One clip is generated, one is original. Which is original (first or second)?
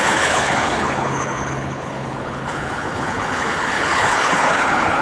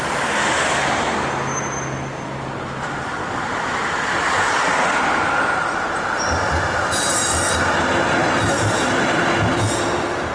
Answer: second